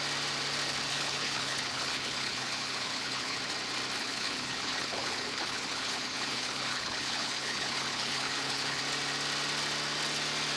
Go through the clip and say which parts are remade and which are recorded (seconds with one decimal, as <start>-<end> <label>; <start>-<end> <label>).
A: 0.0-0.9 recorded; 0.9-3.4 remade; 3.4-4.0 recorded; 4.0-8.8 remade; 8.8-10.6 recorded

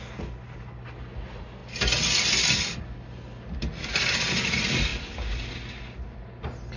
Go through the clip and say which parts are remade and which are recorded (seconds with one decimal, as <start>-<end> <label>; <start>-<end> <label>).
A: 0.0-6.8 recorded

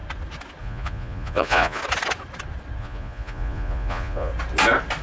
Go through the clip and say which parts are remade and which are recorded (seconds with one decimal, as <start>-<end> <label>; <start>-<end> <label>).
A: 0.0-0.6 recorded; 0.6-1.8 remade; 1.8-2.8 recorded; 2.8-4.3 remade; 4.3-5.0 recorded